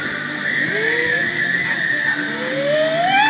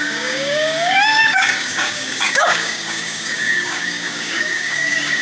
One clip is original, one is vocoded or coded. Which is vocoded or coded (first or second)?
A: second